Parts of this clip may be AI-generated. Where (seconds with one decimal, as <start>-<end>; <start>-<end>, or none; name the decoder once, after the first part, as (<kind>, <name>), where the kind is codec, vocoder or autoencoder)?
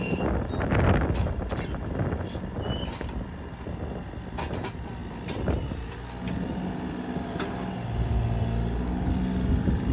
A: none